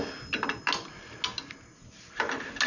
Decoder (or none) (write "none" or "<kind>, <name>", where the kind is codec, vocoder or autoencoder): none